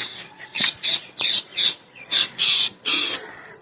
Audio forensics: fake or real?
fake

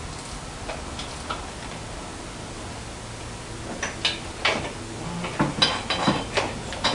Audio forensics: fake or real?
real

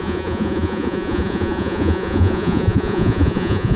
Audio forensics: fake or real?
fake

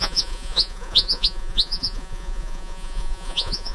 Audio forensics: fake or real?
fake